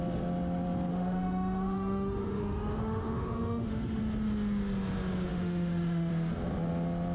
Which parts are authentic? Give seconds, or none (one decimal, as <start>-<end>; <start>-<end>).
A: 0.0-0.9; 4.0-5.3; 6.1-7.1